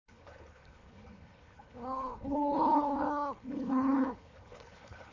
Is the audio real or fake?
fake